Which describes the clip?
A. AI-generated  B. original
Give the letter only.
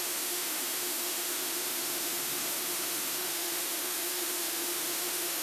A